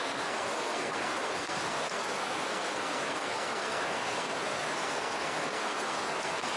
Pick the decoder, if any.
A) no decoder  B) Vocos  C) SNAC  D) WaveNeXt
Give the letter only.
C